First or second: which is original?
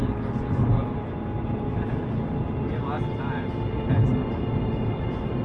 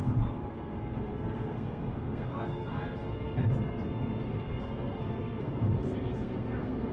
first